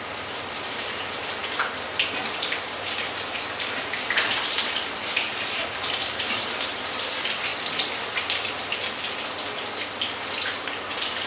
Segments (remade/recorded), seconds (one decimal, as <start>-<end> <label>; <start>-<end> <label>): 0.0-7.5 remade; 7.5-10.3 recorded; 10.3-11.3 remade